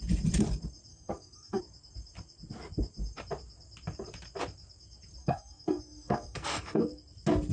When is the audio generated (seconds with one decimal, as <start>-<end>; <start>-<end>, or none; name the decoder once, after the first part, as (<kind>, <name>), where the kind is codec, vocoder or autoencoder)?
0.9-1.6 (codec, SNAC); 5.2-7.0